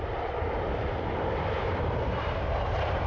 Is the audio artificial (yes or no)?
yes